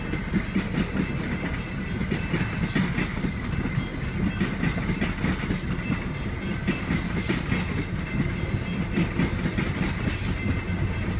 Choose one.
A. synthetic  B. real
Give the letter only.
B